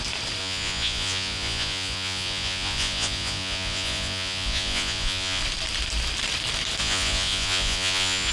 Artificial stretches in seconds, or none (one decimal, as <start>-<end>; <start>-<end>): 0.4-5.4; 6.8-8.3